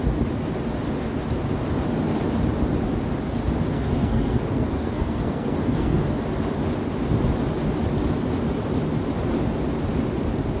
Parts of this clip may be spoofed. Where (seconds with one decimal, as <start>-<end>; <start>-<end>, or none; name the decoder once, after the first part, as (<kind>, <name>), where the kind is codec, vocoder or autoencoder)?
3.7-6.2 (codec, SNAC)